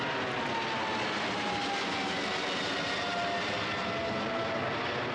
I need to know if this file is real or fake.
real